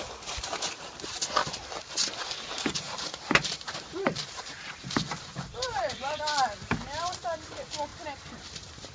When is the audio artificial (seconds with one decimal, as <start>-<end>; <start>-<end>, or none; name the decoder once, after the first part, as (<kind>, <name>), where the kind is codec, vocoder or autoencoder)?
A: 1.4-6.2 (vocoder, BigVGAN v2)